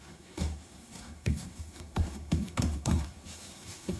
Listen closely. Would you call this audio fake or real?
fake